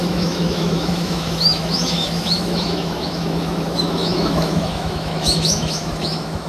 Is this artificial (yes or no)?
yes